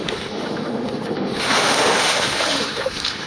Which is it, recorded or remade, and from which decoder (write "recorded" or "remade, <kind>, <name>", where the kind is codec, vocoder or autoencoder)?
remade, autoencoder, DAC-VAE